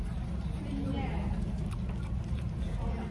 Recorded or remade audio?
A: recorded